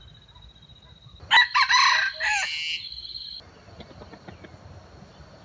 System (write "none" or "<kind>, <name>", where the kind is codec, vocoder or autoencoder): none